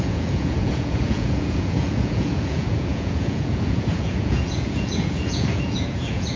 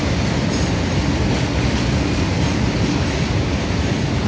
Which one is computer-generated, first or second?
first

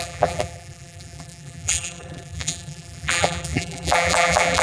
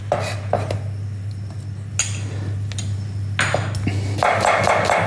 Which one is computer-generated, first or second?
first